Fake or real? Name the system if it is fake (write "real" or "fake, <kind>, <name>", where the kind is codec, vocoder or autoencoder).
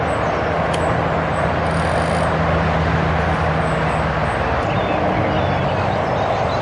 real